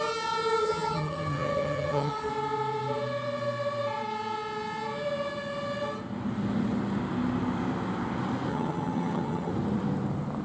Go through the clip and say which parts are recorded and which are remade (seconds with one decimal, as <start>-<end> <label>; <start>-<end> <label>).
0.0-0.6 recorded; 0.6-2.3 remade; 2.3-8.5 recorded; 8.5-9.5 remade; 9.5-10.4 recorded